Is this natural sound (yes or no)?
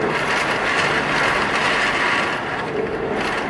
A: yes